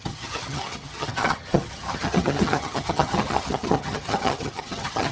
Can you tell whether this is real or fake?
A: fake